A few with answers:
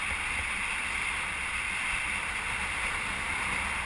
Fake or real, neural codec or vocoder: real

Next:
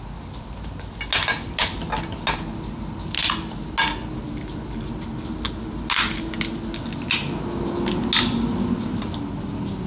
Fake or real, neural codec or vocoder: real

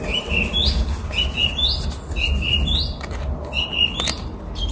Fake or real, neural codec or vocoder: real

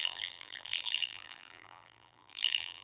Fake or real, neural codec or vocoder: fake, vocoder, BigVGAN v2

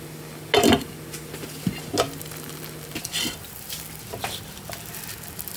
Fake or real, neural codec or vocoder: real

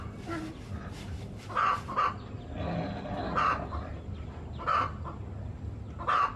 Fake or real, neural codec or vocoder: real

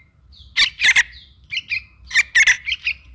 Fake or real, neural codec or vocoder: real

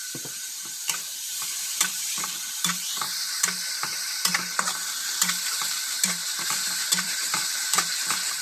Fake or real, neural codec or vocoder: fake, vocoder, BigVGAN v2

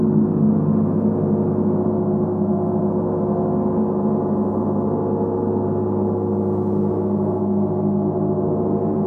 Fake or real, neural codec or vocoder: real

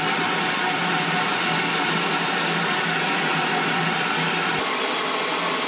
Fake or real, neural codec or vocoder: fake, vocoder, BigVGAN v2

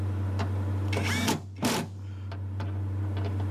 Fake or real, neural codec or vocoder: real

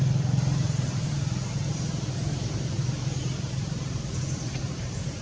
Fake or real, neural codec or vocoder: fake, vocoder, BigVGAN v2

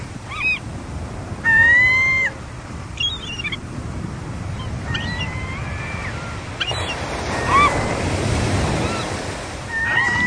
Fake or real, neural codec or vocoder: fake, vocoder, BigVGAN v2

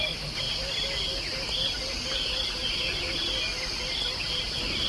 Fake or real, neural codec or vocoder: real